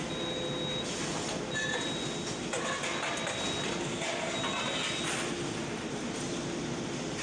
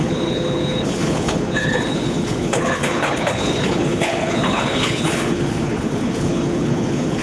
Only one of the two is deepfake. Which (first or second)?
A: second